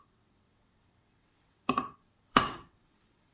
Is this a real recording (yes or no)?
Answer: no